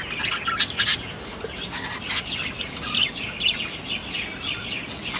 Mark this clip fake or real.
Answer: real